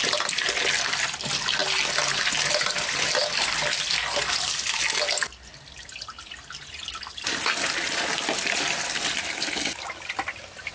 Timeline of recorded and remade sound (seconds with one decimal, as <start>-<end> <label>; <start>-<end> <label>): 0.0-10.7 recorded